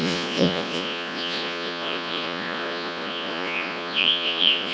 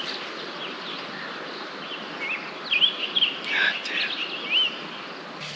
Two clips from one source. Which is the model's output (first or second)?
first